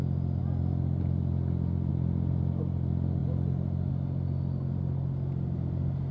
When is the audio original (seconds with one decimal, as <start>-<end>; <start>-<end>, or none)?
0.0-6.1

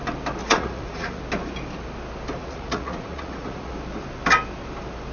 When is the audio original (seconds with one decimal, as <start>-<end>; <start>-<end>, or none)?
0.0-0.4; 1.2-2.4; 3.7-5.1

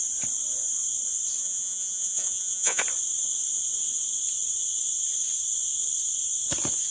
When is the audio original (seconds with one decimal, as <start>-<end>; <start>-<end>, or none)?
0.0-1.4; 2.8-6.9

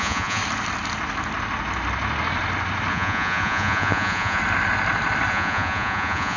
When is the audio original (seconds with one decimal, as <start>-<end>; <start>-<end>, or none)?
0.4-2.9; 4.4-5.3

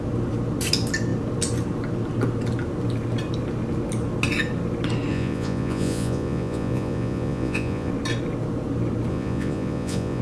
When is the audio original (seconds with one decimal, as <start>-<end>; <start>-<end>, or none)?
0.0-5.1; 7.9-9.1

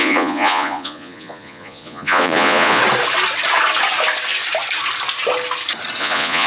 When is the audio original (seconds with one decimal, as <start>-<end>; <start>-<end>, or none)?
2.8-6.0

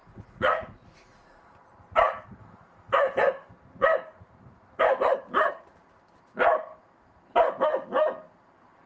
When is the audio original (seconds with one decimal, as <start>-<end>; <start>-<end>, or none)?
1.4-8.9